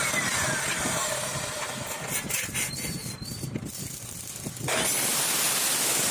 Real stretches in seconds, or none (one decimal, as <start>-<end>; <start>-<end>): 0.0-6.1